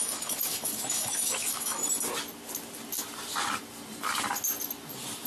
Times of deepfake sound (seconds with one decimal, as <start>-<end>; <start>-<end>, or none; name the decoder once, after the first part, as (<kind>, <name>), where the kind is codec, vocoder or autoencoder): 0.0-1.8 (autoencoder, DAC-VAE)